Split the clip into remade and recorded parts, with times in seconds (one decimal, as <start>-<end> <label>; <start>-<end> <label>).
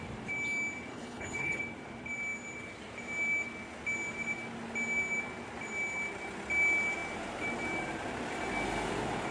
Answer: 0.0-0.9 recorded; 0.9-1.6 remade; 1.6-9.3 recorded